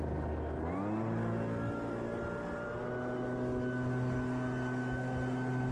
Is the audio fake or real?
real